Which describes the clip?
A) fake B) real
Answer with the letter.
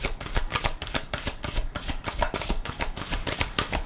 A